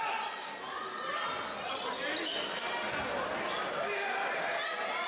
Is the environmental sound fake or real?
real